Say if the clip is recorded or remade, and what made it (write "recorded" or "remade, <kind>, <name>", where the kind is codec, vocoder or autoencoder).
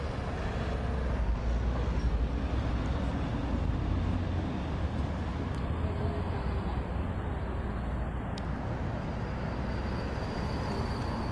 recorded